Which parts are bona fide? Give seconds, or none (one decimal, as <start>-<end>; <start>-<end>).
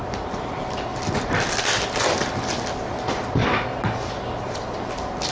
0.0-5.3